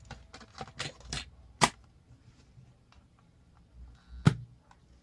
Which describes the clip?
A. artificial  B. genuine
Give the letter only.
B